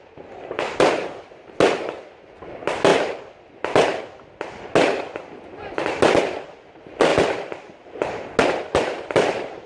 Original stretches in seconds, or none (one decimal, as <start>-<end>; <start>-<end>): 0.0-9.7